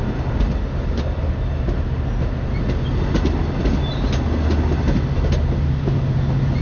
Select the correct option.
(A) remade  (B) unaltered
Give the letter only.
B